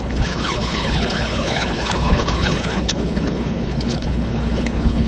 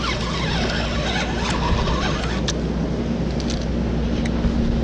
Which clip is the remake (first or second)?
first